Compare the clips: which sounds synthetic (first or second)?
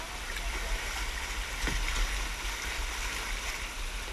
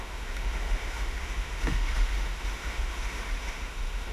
second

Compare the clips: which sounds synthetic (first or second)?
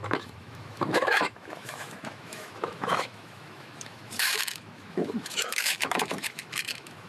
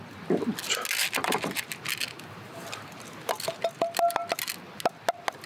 first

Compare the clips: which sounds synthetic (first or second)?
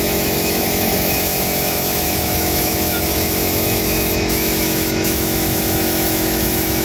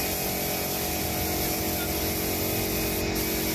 first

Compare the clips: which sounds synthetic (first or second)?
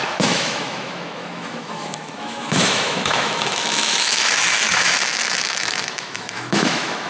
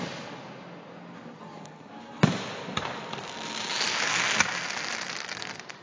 first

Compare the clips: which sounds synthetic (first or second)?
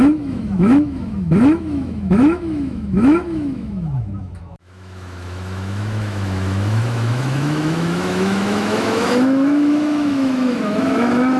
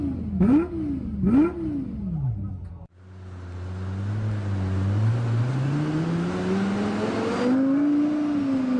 first